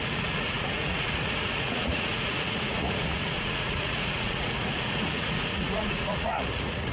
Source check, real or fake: fake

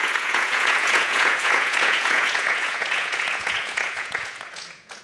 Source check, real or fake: fake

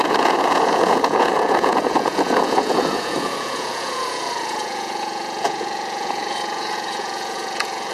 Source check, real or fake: fake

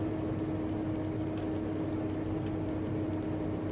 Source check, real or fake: real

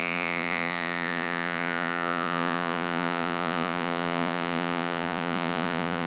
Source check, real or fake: fake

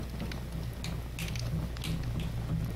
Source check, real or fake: real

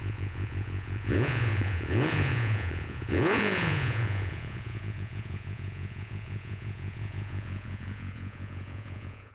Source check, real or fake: fake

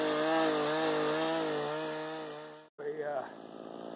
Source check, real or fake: real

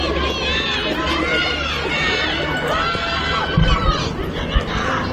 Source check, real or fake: real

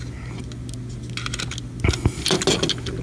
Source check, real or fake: real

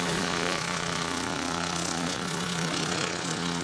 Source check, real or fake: fake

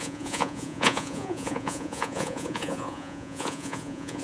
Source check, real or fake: fake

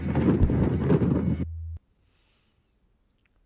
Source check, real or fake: real